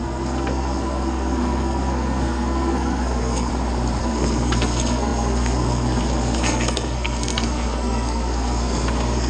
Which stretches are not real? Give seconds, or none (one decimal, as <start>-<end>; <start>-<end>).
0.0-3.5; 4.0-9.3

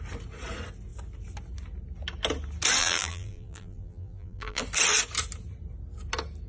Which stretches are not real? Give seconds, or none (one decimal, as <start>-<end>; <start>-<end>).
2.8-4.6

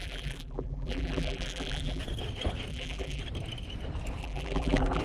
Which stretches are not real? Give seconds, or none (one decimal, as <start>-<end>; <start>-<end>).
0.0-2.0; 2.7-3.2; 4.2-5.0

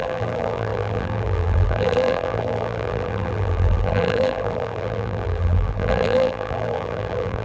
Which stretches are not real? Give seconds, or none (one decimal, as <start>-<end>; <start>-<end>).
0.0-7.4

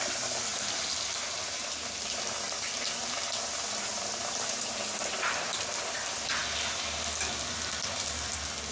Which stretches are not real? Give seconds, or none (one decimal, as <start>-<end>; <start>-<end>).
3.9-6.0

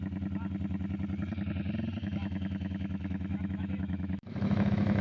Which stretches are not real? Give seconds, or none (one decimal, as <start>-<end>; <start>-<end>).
2.0-5.0

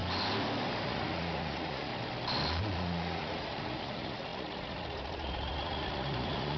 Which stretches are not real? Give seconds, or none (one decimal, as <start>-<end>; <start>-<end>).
0.8-1.9; 2.6-6.6